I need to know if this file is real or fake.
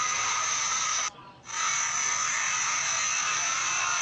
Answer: real